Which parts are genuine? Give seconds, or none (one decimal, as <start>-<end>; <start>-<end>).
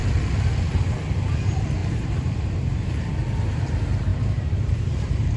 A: 0.0-1.8; 2.9-4.1